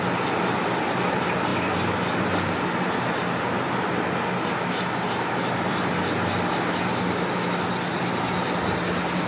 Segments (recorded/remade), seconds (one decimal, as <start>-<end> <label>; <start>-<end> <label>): 0.0-9.3 recorded